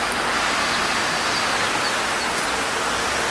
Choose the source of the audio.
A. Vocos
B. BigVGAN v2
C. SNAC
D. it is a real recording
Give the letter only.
D